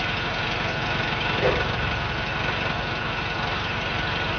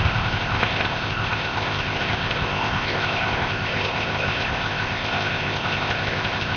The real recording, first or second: first